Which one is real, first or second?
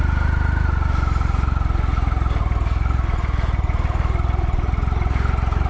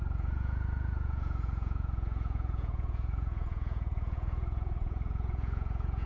first